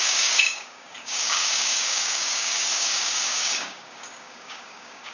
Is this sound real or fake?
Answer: fake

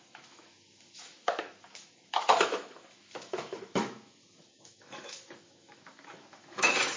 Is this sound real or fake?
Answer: fake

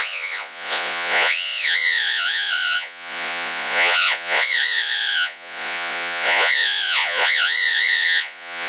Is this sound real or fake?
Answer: fake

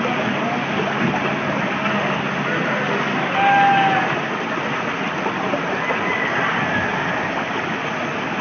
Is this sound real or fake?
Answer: real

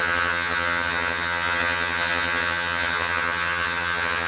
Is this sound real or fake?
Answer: fake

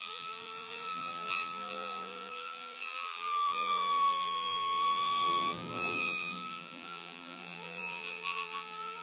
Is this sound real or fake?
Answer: fake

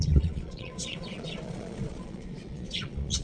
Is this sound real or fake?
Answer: fake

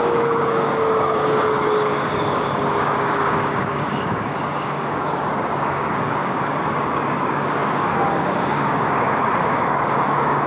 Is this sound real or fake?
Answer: fake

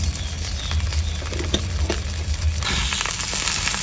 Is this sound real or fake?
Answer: real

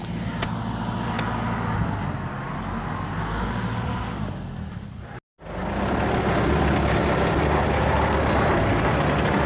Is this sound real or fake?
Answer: real